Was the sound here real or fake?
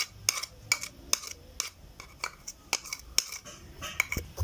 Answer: real